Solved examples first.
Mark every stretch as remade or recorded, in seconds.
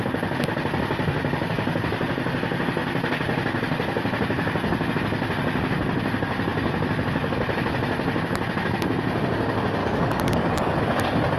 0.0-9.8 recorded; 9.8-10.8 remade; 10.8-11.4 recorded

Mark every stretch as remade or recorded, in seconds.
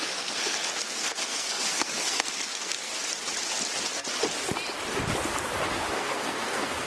0.0-2.9 remade; 2.9-5.9 recorded; 5.9-6.9 remade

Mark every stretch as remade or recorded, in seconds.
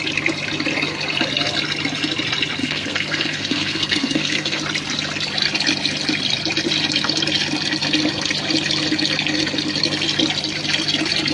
0.0-2.6 recorded; 2.6-4.6 remade; 4.6-11.3 recorded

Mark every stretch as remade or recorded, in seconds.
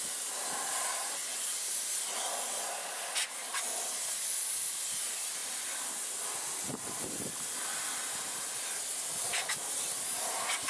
0.0-5.4 recorded; 5.4-8.1 remade; 8.1-10.7 recorded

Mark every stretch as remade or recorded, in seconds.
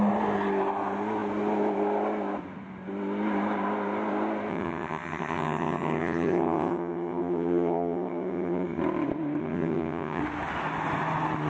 0.0-4.5 recorded; 4.5-8.8 remade; 8.8-9.4 recorded; 9.4-10.2 remade; 10.2-11.5 recorded